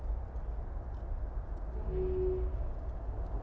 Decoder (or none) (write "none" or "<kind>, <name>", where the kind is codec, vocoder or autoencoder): none